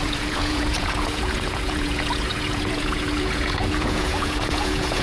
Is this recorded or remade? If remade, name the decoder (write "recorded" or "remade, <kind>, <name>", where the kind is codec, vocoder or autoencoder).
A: remade, vocoder, Vocos